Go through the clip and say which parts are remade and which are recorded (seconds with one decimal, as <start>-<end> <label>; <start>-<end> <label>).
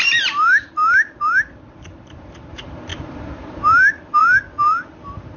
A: 0.0-5.4 recorded